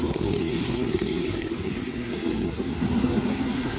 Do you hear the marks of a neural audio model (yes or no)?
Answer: yes